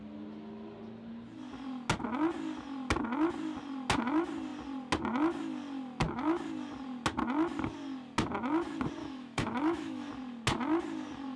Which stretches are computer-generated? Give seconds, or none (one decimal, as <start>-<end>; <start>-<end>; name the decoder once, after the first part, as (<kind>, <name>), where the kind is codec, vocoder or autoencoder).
9.0-10.1 (autoencoder, DAC-VAE)